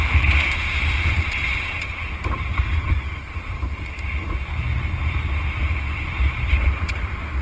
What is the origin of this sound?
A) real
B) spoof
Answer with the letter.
B